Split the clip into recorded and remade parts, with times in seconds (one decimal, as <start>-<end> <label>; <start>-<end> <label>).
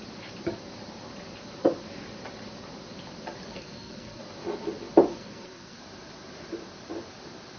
0.0-3.5 recorded; 3.5-4.2 remade; 4.2-5.1 recorded; 5.1-5.8 remade; 5.8-7.6 recorded